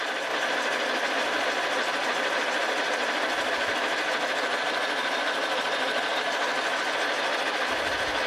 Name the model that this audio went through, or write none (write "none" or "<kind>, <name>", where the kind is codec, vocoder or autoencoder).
none